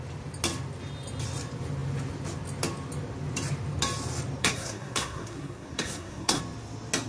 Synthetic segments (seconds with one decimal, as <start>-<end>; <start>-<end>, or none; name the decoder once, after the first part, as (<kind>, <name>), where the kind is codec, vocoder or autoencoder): 4.4-6.4 (codec, SNAC)